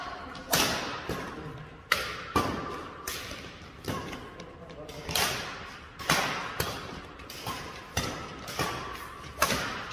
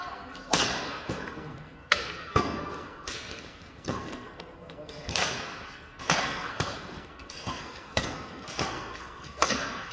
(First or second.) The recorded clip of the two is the first